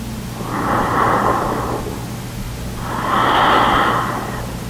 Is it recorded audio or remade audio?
recorded